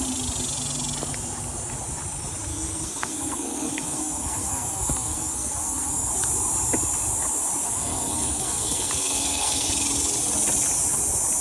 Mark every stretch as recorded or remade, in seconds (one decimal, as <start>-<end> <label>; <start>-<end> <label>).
0.0-2.5 recorded; 2.5-6.1 remade; 6.1-7.6 recorded; 7.6-9.7 remade; 9.7-11.4 recorded